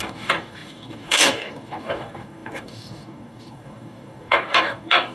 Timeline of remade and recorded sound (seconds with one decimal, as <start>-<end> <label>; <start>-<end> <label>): 0.0-5.1 remade